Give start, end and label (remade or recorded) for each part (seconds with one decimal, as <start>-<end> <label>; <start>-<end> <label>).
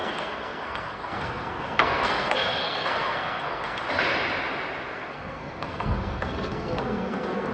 0.0-3.8 remade; 3.8-4.9 recorded; 4.9-7.5 remade